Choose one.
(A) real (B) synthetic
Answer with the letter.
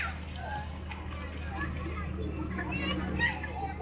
A